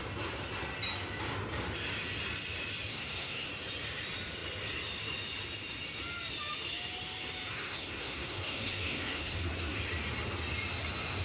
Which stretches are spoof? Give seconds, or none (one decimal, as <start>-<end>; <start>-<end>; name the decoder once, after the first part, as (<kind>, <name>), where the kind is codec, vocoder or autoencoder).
2.9-3.5 (codec, SNAC); 7.5-9.8

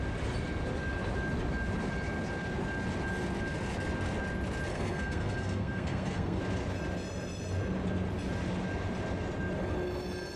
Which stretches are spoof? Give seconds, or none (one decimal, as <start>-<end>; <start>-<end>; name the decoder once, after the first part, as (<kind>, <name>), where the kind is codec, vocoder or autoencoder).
4.7-6.4 (codec, SNAC)

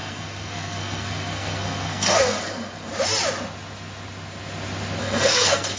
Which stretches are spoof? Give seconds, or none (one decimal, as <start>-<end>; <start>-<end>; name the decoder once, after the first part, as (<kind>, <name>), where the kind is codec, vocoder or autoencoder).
0.0-2.9 (codec, SNAC); 5.0-5.8

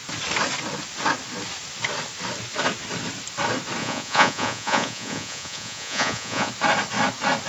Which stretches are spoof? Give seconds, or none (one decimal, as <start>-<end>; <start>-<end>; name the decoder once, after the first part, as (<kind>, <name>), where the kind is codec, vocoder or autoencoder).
3.8-6.5 (vocoder, Vocos)

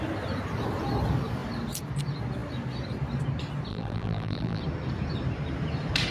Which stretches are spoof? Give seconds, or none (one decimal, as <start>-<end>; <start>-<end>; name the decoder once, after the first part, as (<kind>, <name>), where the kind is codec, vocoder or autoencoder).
3.7-4.6 (vocoder, BigVGAN v2)

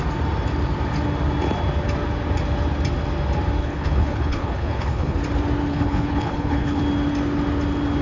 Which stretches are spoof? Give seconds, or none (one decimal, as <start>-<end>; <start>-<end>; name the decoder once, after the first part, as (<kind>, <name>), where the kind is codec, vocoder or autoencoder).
3.6-5.2 (codec, HILCodec); 5.7-6.8